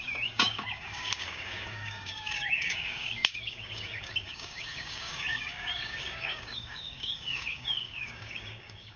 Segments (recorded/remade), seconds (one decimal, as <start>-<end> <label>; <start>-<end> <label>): 0.0-9.0 remade